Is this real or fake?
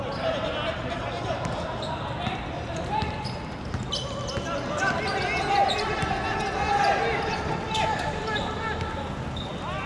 real